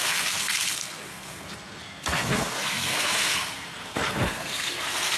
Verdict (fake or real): fake